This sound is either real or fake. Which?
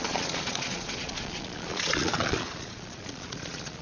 fake